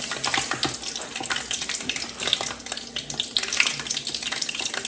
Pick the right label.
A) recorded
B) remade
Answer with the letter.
A